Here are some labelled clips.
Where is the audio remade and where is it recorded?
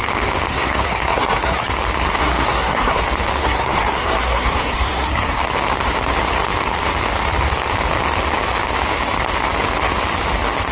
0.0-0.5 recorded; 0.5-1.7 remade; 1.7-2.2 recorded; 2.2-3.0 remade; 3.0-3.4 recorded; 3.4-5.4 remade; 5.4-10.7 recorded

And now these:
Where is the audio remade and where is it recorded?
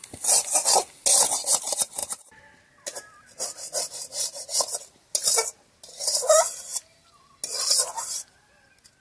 0.0-9.0 recorded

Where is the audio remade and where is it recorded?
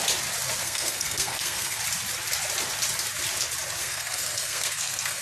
0.0-0.6 recorded; 0.6-1.8 remade; 1.8-3.8 recorded; 3.8-5.2 remade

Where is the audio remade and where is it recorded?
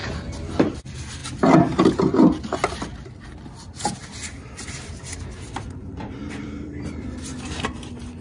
0.0-0.6 recorded; 0.6-1.2 remade; 1.2-5.4 recorded; 5.4-8.2 remade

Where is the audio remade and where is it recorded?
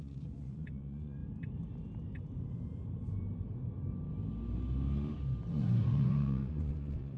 0.0-1.2 remade; 1.2-5.5 recorded; 5.5-7.2 remade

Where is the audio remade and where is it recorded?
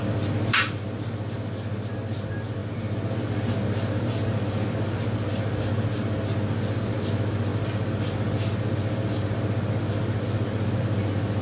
0.0-11.4 recorded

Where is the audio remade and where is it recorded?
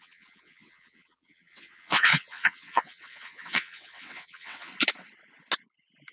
0.0-4.7 remade; 4.7-6.1 recorded